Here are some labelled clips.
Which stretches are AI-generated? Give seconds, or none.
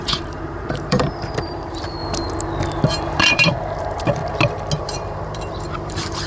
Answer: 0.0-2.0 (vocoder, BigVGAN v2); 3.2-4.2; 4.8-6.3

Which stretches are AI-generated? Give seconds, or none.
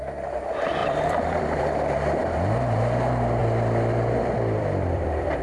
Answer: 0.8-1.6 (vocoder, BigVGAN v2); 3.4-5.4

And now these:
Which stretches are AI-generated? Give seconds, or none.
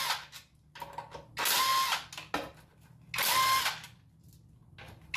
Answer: none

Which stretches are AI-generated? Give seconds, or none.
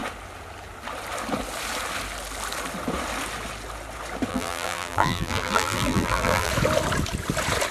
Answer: 4.3-6.5 (vocoder, BigVGAN v2)